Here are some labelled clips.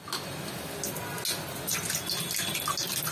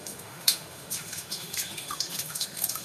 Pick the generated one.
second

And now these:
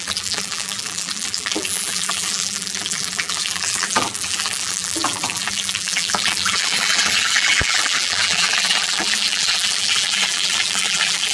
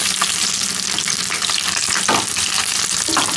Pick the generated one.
first